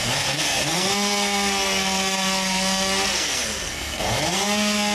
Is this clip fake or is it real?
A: fake